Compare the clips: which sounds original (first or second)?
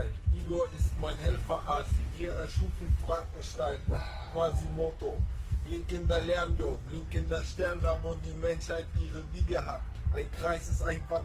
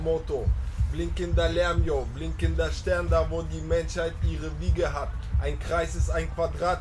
second